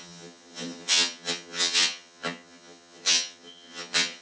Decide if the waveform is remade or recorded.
remade